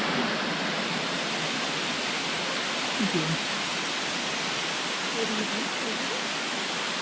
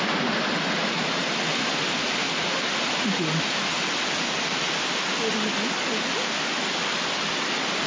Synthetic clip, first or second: first